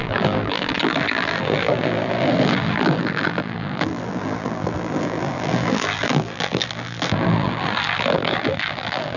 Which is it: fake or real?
fake